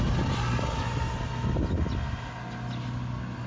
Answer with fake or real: real